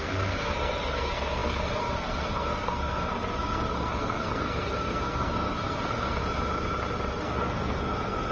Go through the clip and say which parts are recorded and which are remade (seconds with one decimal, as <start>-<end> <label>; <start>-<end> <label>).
0.0-6.2 remade; 6.2-7.2 recorded; 7.2-8.3 remade

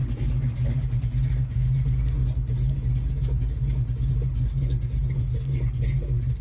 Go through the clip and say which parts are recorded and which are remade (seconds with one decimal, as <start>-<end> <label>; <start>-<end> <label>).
0.0-6.4 recorded

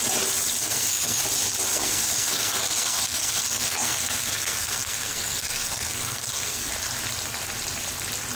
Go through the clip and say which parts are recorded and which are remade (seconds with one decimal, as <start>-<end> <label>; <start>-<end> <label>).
0.0-0.6 recorded; 0.6-1.2 remade; 1.2-1.7 recorded; 1.7-6.7 remade; 6.7-8.4 recorded

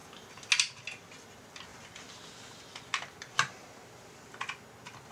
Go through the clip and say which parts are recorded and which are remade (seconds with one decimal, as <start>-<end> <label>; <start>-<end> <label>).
0.0-5.1 recorded